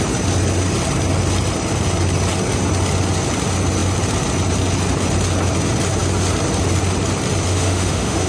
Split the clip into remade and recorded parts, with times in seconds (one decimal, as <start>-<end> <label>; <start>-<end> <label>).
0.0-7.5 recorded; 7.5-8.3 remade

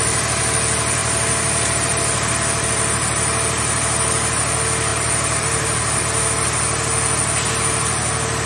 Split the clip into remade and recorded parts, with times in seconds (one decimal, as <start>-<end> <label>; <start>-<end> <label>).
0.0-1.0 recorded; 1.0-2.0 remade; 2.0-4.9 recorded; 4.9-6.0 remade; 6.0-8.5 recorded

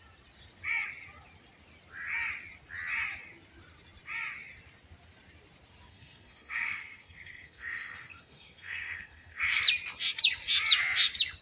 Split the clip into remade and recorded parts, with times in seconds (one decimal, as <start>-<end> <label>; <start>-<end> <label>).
0.0-5.9 recorded; 5.9-9.6 remade; 9.6-11.4 recorded

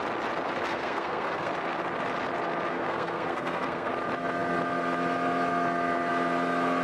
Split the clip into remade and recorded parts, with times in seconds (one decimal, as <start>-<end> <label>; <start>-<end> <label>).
0.0-0.7 recorded; 0.7-1.5 remade; 1.5-2.7 recorded; 2.7-3.9 remade; 3.9-6.8 recorded